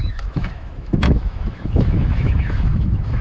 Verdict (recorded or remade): remade